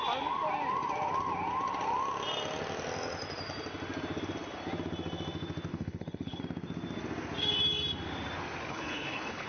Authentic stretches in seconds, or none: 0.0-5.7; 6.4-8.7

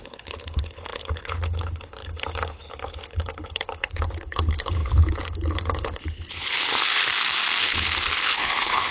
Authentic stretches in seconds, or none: 7.1-7.6

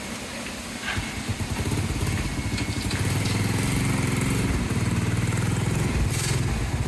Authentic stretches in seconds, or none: 0.0-6.9

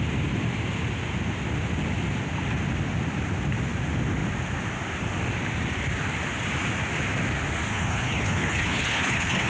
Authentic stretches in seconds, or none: 0.0-7.7

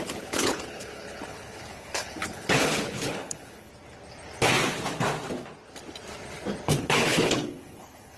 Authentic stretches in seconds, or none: 3.7-6.8

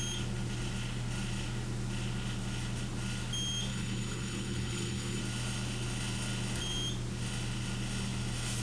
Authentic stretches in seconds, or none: 0.0-3.7; 5.2-8.6

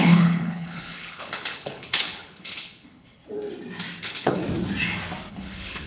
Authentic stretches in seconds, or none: 3.2-4.0; 4.4-5.3

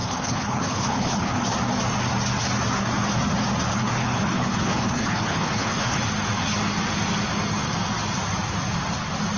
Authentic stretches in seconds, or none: 1.4-3.7; 6.0-9.4